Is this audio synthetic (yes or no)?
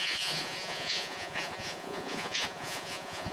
yes